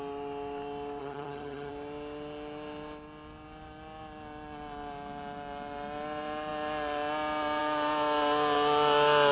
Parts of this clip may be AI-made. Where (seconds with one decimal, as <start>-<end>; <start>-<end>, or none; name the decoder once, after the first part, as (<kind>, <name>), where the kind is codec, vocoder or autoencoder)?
1.0-1.7 (vocoder, HiFi-GAN)